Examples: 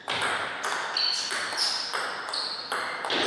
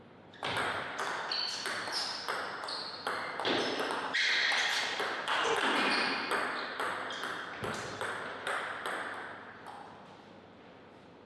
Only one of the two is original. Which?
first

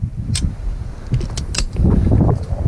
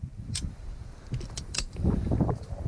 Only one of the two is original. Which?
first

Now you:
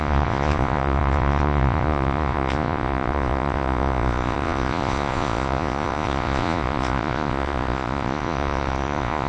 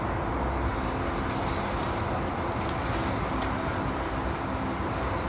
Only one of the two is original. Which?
second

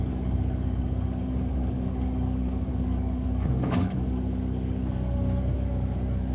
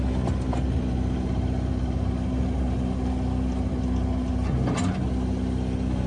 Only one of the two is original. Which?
second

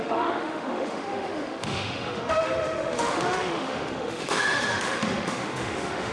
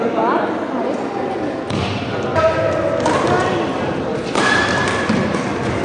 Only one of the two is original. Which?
second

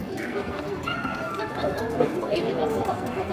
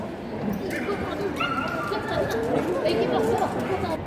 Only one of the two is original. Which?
second